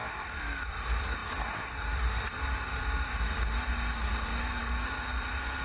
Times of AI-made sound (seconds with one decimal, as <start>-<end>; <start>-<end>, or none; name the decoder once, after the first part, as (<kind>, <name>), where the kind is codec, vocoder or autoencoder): none